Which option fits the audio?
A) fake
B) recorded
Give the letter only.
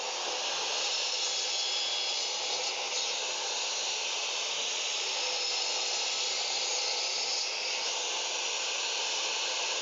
B